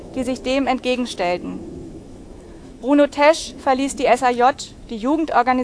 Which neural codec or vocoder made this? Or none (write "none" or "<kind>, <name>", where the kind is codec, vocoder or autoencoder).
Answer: autoencoder, DAC-VAE